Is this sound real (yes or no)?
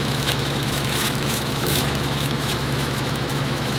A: no